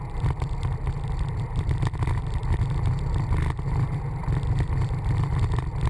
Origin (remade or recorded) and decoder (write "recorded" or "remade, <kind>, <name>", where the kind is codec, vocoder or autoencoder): recorded